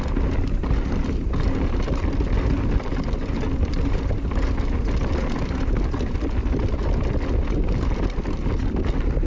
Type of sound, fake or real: real